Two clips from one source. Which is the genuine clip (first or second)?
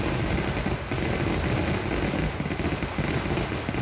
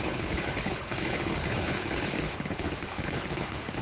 first